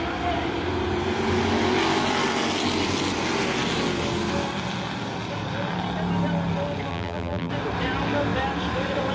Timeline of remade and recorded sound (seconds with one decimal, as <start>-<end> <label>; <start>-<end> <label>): 0.0-6.9 recorded; 6.9-7.5 remade; 7.5-9.1 recorded